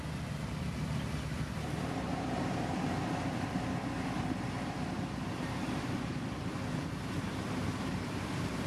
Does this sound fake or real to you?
fake